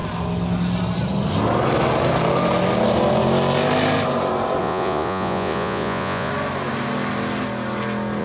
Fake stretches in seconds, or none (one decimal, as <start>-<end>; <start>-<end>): 4.6-6.3